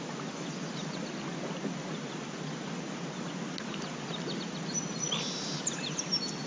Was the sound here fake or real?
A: real